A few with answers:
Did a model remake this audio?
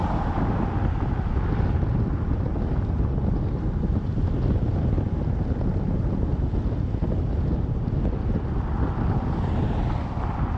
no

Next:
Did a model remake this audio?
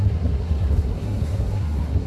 yes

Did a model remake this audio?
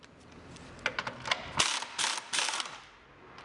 no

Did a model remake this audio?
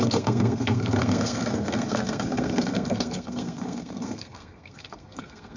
yes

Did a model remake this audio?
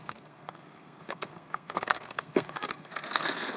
yes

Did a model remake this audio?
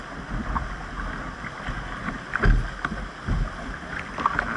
no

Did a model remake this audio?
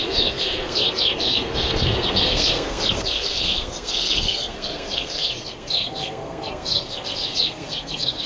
yes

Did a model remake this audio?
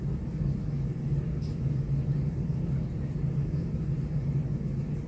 no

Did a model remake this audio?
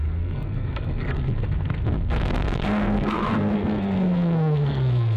yes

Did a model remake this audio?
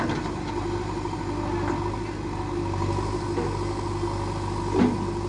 no